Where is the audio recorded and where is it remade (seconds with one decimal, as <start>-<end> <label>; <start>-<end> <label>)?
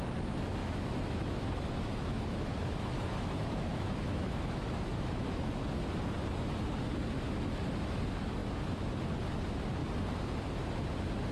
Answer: 0.0-0.6 recorded; 0.6-5.5 remade; 5.5-11.3 recorded